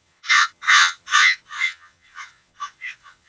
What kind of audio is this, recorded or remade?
remade